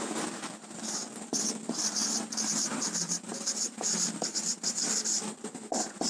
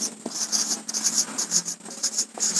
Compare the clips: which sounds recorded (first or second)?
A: second